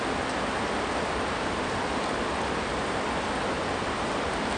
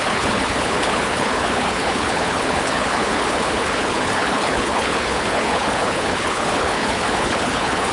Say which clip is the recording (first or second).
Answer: first